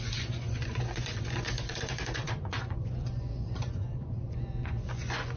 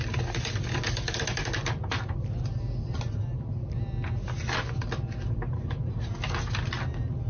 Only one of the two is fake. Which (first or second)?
first